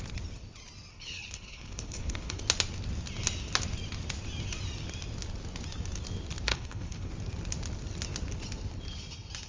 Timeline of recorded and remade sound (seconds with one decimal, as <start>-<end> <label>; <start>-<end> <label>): 0.0-0.9 recorded; 0.9-2.4 remade; 2.4-6.5 recorded; 6.5-7.1 remade; 7.1-9.5 recorded